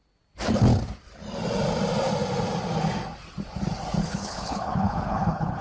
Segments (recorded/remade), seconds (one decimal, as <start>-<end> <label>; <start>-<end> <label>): 0.0-4.0 recorded; 4.0-5.6 remade